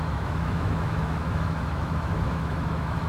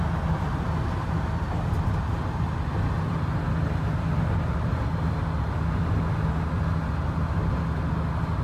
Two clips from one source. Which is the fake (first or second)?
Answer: first